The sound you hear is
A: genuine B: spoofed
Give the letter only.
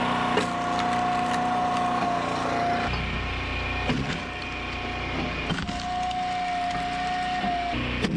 A